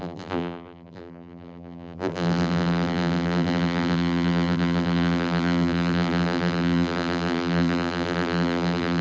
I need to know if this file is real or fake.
fake